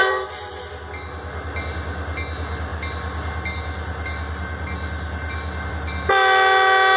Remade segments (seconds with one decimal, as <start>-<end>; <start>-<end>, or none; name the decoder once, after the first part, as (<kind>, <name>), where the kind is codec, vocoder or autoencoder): 0.0-0.7 (vocoder, BigVGAN v2)